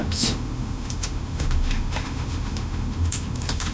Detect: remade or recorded remade